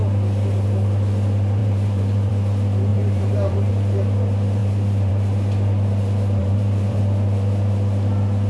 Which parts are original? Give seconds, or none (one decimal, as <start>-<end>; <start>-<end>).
0.0-1.6; 2.3-2.9; 3.7-4.6; 5.1-6.4; 7.0-8.5